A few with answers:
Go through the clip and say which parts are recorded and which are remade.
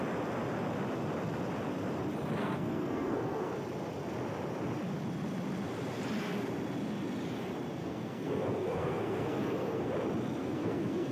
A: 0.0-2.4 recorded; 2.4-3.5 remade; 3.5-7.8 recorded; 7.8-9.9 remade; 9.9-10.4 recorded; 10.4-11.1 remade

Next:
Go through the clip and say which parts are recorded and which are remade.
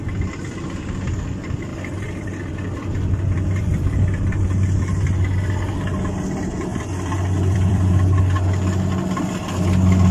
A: 0.0-1.7 recorded; 1.7-4.0 remade; 4.0-6.7 recorded; 6.7-8.2 remade; 8.2-10.1 recorded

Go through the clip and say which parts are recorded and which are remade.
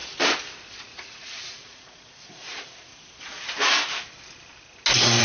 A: 0.0-0.8 recorded; 0.8-2.9 remade; 2.9-5.2 recorded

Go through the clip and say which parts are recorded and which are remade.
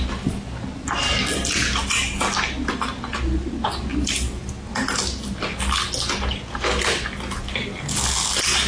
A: 0.0-8.7 recorded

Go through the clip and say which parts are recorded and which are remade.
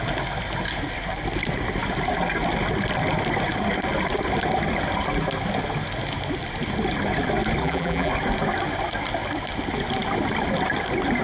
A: 0.0-7.6 recorded; 7.6-8.1 remade; 8.1-11.2 recorded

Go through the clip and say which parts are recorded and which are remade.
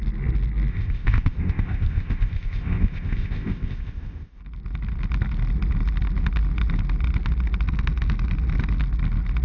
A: 0.0-0.7 recorded; 0.7-4.4 remade; 4.4-9.4 recorded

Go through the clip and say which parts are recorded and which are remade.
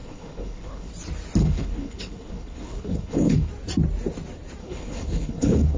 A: 0.0-0.9 remade; 0.9-1.4 recorded; 1.4-3.5 remade; 3.5-4.6 recorded; 4.6-5.8 remade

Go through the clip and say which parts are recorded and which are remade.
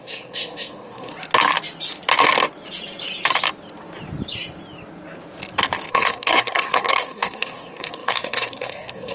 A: 0.0-1.1 remade; 1.1-5.9 recorded; 5.9-9.1 remade